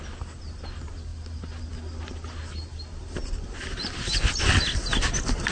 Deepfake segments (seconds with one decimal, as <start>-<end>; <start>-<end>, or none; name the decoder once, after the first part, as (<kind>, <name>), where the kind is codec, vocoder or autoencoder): none